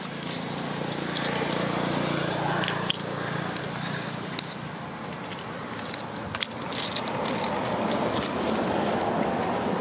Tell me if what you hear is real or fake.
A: real